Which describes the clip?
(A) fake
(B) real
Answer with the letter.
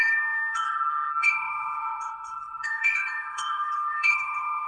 A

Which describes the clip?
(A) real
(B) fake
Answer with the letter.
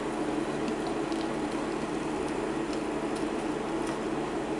A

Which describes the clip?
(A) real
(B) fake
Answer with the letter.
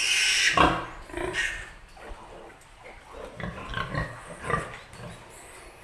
A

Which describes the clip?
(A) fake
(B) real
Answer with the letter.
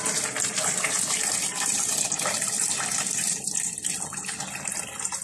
B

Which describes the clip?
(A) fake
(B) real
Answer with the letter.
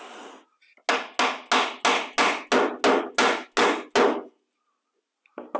B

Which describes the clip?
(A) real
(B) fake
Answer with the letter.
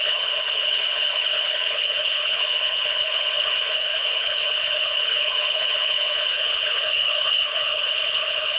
B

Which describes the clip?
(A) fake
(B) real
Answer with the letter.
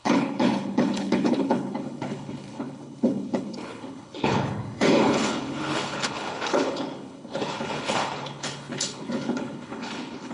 A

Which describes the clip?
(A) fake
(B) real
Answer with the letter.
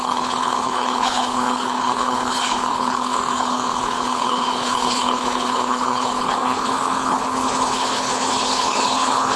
A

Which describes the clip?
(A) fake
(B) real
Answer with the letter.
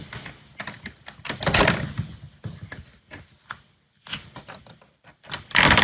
B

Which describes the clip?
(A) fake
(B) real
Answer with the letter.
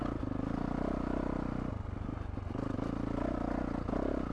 B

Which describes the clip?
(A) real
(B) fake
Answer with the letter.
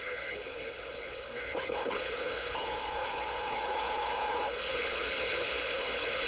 B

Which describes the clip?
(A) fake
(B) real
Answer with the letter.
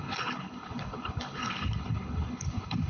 A